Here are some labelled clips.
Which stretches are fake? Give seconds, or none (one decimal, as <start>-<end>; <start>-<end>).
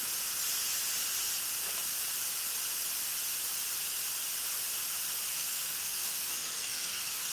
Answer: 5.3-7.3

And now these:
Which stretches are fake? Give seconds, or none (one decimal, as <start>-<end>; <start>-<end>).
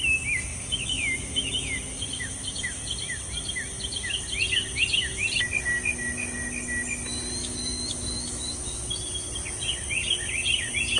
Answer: 0.5-2.6; 7.4-9.3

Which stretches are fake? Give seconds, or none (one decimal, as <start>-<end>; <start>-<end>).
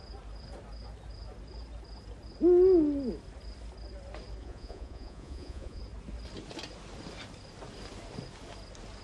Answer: 4.4-5.8